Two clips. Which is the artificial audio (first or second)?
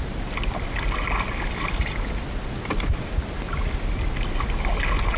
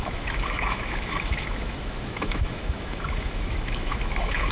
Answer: second